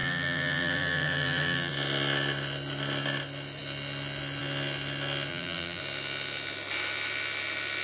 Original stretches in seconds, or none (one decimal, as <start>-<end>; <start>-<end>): 1.7-5.3; 5.8-7.8